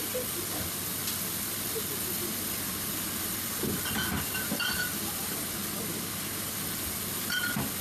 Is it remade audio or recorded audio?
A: recorded